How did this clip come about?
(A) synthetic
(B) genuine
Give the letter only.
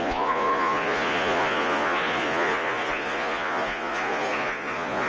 A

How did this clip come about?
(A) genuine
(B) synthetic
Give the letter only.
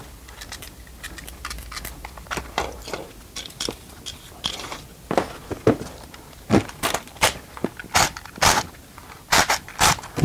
A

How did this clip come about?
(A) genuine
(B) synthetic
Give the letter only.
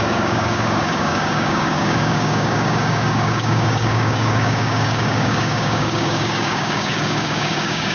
B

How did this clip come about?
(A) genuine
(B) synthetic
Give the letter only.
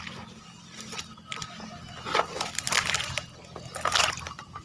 A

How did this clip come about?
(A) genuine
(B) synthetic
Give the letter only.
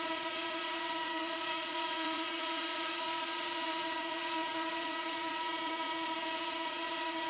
B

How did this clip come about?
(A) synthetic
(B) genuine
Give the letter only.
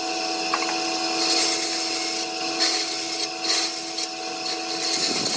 B